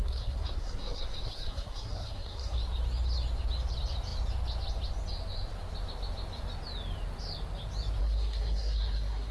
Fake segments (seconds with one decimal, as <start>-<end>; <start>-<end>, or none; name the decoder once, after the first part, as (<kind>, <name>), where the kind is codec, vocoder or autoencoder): 0.0-2.6 (codec, SNAC); 8.0-9.3